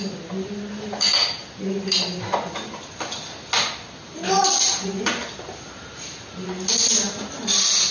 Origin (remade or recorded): recorded